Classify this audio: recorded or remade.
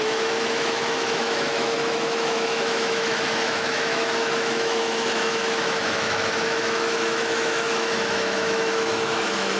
remade